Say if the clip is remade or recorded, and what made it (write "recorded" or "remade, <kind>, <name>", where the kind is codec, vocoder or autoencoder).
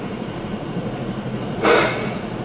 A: remade, vocoder, Vocos